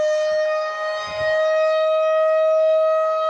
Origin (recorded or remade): remade